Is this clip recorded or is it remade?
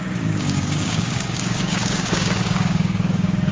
remade